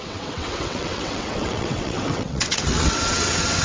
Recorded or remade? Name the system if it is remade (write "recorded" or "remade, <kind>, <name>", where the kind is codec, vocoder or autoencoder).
remade, vocoder, WaveNeXt